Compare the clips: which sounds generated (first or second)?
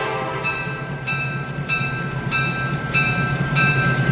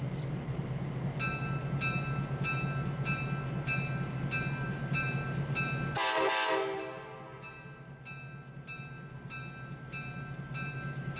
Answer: first